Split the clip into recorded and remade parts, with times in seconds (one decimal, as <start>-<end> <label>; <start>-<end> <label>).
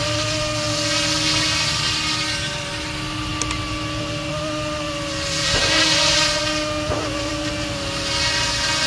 0.0-8.9 recorded